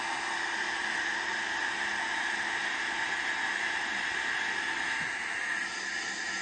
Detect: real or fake real